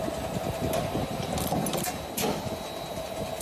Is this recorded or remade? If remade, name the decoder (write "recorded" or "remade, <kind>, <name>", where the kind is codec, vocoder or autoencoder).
recorded